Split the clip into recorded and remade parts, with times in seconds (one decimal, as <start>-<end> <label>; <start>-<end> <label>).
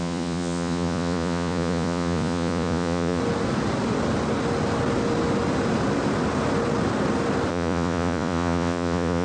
0.0-3.2 remade; 3.2-7.5 recorded; 7.5-9.2 remade